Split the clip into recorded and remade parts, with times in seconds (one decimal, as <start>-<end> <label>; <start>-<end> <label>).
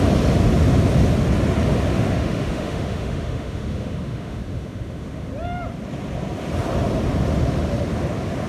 0.0-1.9 recorded; 1.9-5.3 remade; 5.3-8.5 recorded